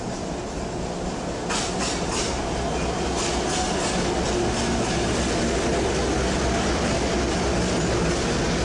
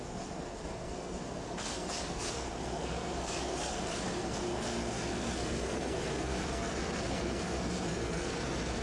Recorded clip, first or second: first